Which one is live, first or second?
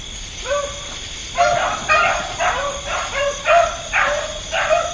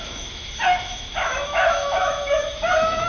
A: first